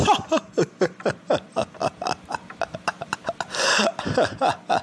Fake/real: real